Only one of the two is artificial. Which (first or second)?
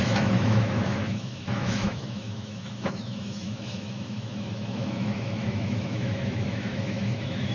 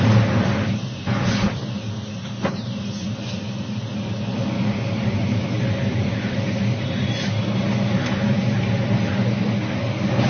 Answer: first